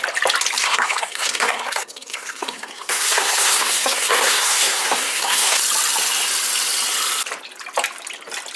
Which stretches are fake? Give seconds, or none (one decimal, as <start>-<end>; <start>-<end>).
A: 0.6-5.6